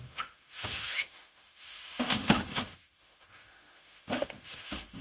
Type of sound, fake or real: fake